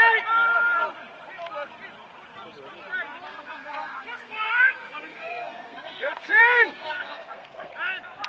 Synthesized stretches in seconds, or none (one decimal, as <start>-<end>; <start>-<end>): 3.3-7.7